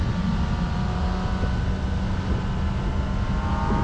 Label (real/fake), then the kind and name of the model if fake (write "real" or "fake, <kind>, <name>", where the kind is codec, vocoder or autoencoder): real